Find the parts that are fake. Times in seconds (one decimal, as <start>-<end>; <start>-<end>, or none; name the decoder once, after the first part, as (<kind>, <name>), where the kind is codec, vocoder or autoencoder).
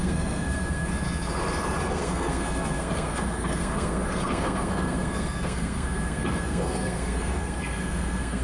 0.0-0.9 (codec, SNAC); 1.9-8.4